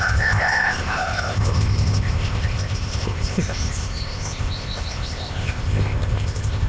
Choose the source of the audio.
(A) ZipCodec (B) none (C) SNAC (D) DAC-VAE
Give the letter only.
A